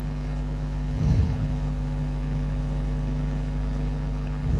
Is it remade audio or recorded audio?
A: remade